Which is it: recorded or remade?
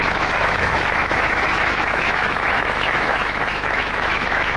remade